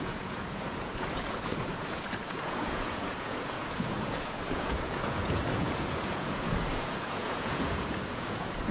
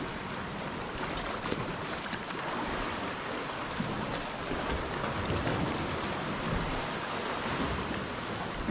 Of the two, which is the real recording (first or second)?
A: second